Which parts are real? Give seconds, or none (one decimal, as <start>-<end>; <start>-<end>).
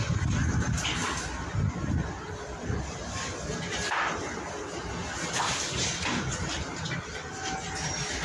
0.0-8.2